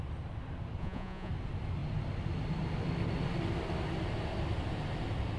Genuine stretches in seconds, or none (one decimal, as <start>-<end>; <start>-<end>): 0.0-0.8; 1.3-5.4